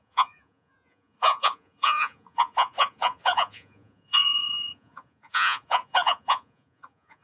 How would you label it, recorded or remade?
remade